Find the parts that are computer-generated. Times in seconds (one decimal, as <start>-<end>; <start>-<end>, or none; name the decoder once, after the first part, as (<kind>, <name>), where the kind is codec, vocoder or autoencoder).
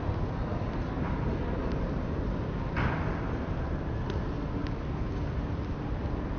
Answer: 4.6-5.1 (vocoder, BigVGAN v2)